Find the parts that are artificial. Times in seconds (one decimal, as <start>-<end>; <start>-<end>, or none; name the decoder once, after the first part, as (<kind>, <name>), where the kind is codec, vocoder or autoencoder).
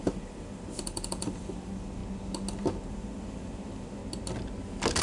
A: 0.0-2.0 (vocoder, BigVGAN v2); 2.9-4.0